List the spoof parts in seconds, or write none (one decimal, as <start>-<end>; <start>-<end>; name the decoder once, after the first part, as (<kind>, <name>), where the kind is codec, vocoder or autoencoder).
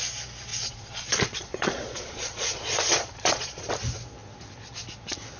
0.5-3.7 (vocoder, Vocos)